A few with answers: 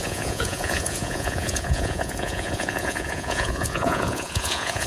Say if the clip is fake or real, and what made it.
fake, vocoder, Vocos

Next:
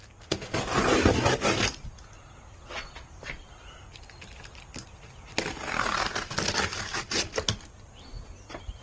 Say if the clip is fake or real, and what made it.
real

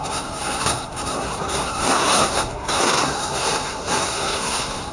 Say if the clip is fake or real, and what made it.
fake, codec, SNAC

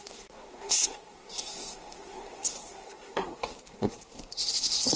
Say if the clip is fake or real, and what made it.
fake, codec, SNAC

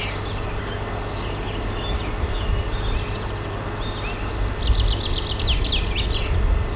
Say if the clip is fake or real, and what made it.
real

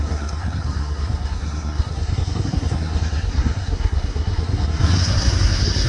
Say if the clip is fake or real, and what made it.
fake, codec, SNAC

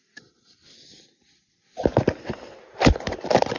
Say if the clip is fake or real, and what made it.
real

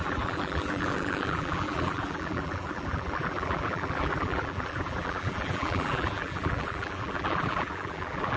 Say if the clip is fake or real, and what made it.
fake, vocoder, BigVGAN v2